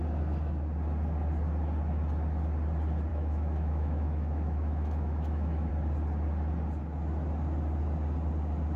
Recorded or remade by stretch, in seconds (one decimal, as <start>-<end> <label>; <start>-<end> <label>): 0.0-3.1 recorded; 3.1-5.7 remade; 5.7-8.8 recorded

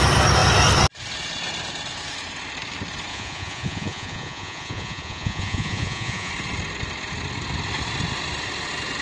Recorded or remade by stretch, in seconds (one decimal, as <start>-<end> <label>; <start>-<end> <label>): 0.0-3.1 recorded; 3.1-6.3 remade; 6.3-9.0 recorded

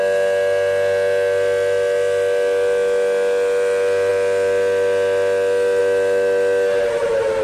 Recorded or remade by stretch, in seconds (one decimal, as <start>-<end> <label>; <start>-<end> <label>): 0.0-7.4 recorded

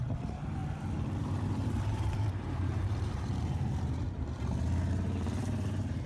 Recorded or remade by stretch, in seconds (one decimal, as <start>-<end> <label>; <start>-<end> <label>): 0.0-0.6 remade; 0.6-1.2 recorded; 1.2-6.1 remade